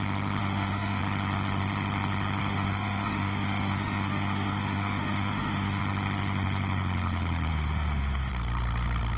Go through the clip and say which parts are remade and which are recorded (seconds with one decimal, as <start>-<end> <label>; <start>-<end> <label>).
0.0-0.4 recorded; 0.4-1.0 remade; 1.0-2.4 recorded; 2.4-5.8 remade; 5.8-7.5 recorded; 7.5-8.3 remade; 8.3-9.2 recorded